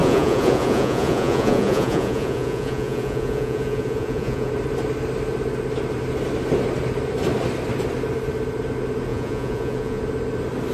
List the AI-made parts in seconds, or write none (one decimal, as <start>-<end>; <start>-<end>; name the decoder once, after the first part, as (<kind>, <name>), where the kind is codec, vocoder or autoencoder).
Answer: 0.0-4.5 (vocoder, Vocos); 9.1-10.0